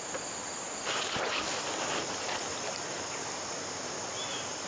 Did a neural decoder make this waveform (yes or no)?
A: no